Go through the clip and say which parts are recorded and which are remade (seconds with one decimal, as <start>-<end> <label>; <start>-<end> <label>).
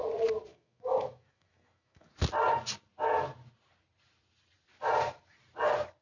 0.0-0.5 recorded; 0.5-2.1 remade; 2.1-6.0 recorded